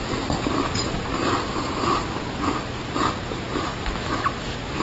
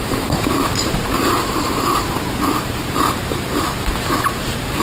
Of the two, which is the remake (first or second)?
second